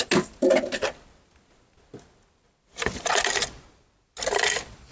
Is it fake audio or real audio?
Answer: real